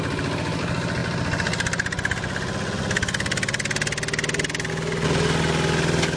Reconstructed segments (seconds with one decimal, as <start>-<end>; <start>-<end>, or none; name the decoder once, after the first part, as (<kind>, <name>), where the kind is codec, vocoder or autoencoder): none